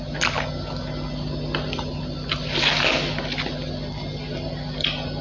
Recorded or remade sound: recorded